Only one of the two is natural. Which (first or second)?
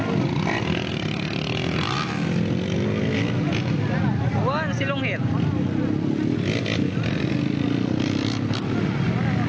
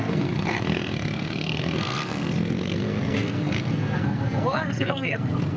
first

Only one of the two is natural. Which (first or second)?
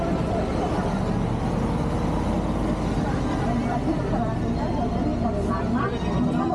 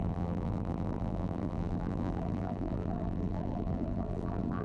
first